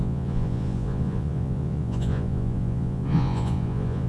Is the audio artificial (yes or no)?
yes